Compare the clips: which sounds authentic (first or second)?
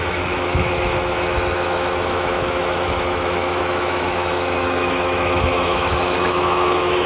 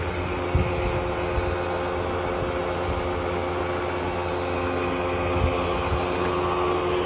second